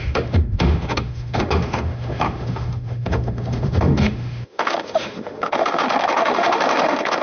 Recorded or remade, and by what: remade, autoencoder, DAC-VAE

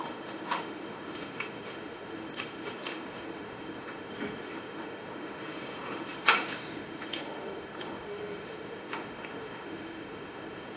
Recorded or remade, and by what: remade, autoencoder, DAC-VAE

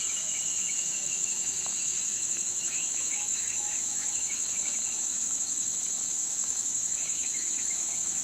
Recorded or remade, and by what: remade, autoencoder, DAC-VAE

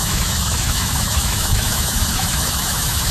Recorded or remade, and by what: remade, autoencoder, DAC-VAE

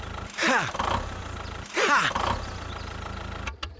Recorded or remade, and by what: recorded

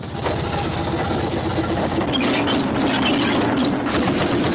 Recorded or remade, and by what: recorded